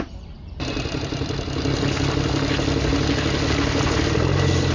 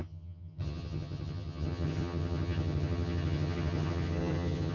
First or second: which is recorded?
first